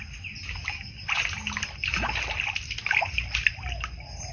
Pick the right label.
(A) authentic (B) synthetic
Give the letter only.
A